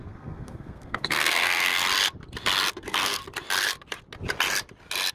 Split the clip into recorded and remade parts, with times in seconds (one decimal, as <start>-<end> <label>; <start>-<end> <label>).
0.0-1.8 remade; 1.8-2.7 recorded; 2.7-3.2 remade; 3.2-5.1 recorded